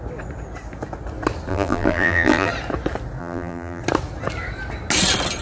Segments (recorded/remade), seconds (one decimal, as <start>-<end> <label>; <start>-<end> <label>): 0.0-1.5 recorded; 1.5-2.5 remade; 2.5-3.2 recorded; 3.2-3.8 remade; 3.8-5.4 recorded